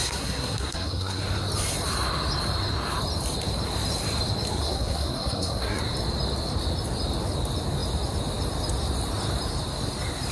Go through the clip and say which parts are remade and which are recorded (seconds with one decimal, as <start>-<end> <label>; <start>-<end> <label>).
0.0-1.2 remade; 1.2-4.5 recorded; 4.5-5.8 remade; 5.8-10.3 recorded